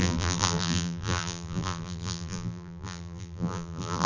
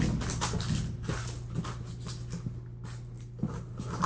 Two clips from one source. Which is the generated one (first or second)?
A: first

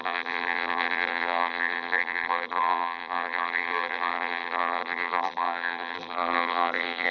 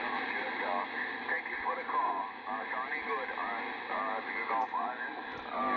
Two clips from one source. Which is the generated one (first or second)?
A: first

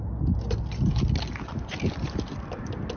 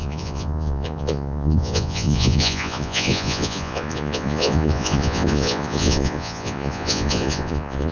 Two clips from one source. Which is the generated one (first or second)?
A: second